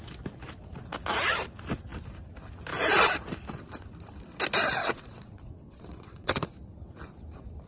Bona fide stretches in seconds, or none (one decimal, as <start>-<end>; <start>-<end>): 0.0-4.8; 6.5-7.7